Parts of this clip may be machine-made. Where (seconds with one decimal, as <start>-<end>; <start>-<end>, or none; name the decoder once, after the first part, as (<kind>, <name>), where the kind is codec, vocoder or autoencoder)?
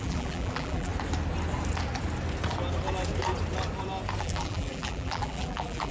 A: 0.0-0.9 (vocoder, BigVGAN v2); 4.2-5.9